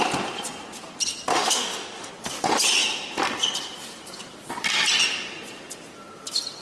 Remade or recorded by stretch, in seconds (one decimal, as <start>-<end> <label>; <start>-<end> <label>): 0.0-1.3 recorded; 1.3-2.1 remade; 2.1-6.6 recorded